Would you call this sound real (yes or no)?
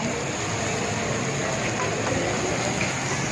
yes